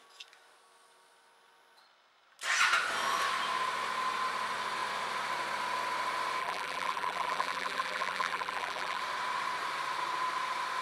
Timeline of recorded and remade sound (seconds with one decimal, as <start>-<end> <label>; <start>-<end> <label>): 0.0-6.4 recorded; 6.4-9.0 remade; 9.0-10.8 recorded